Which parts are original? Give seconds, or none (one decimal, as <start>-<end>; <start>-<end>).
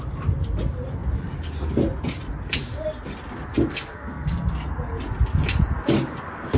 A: 0.0-3.7; 4.5-6.6